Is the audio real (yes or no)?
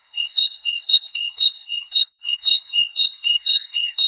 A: no